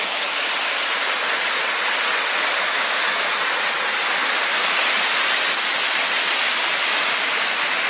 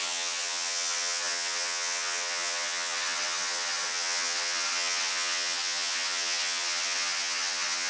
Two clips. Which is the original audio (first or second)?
first